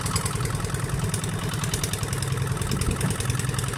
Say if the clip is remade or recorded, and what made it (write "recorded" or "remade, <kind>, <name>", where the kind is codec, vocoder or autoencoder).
recorded